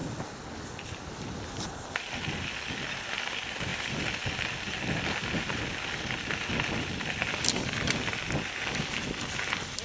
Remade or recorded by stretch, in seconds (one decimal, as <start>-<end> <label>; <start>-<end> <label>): 0.0-9.8 recorded